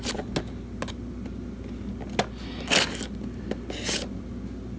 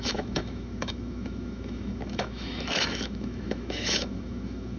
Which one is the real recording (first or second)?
first